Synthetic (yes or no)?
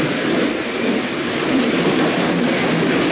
no